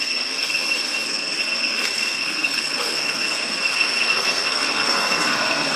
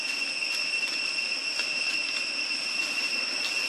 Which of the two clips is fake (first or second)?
first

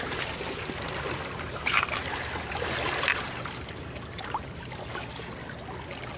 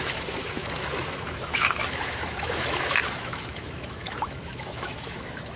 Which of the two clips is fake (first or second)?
second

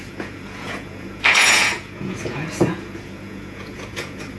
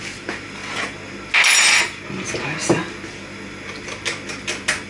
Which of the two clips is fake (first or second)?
first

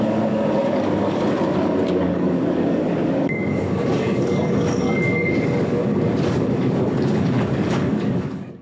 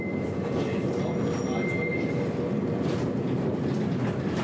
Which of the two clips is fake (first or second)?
first